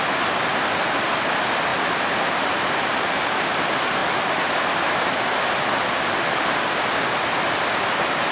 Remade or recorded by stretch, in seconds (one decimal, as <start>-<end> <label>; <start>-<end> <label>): 0.0-1.7 recorded; 1.7-3.0 remade; 3.0-8.3 recorded